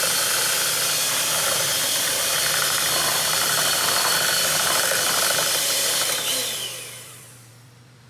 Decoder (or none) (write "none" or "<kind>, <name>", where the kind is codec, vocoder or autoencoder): vocoder, BigVGAN v2